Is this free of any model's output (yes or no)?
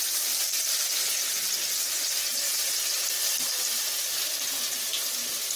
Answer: yes